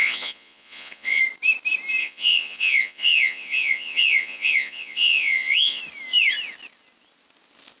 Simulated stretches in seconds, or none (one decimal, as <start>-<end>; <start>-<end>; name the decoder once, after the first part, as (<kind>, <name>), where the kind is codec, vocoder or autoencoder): 0.0-1.2 (vocoder, Vocos); 2.0-5.8